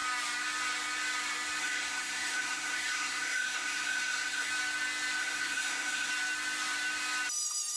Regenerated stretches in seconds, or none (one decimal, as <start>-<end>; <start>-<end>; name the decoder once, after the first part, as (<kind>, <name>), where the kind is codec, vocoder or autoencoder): 1.6-4.5 (codec, SNAC); 5.2-6.1